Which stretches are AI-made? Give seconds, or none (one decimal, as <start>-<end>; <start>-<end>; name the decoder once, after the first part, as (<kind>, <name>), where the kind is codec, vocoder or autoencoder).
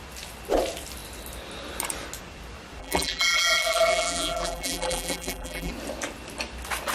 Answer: 2.8-5.7 (vocoder, BigVGAN v2)